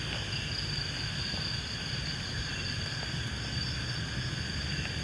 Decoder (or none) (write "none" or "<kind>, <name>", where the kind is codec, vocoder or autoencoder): none